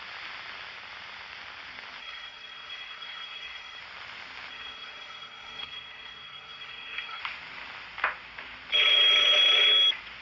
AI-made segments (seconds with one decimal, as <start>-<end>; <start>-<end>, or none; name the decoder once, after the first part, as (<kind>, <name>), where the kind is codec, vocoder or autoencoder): 2.0-3.8 (codec, SNAC); 4.5-7.2